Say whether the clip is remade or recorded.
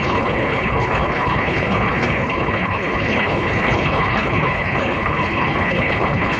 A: remade